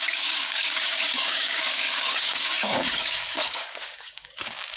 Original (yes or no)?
no